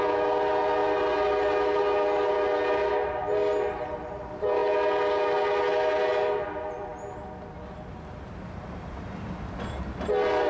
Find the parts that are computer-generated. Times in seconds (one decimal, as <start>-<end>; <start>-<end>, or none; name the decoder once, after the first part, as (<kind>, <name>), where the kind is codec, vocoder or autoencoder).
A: none